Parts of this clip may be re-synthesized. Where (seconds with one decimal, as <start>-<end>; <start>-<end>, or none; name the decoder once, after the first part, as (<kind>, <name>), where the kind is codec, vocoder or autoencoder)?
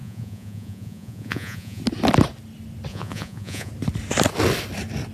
0.0-1.8 (vocoder, Vocos); 2.9-3.7